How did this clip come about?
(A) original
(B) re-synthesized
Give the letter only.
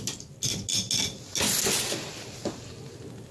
A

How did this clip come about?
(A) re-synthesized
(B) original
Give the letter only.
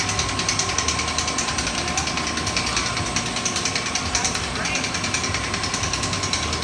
B